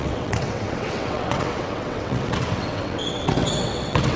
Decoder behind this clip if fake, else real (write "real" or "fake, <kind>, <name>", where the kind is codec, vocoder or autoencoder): fake, vocoder, WaveNeXt